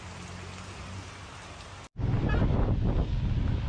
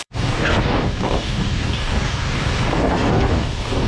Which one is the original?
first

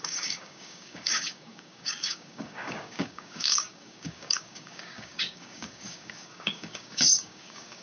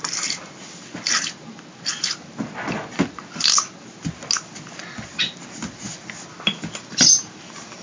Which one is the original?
second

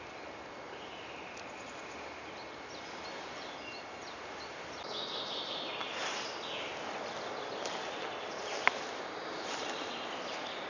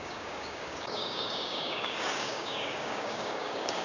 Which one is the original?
first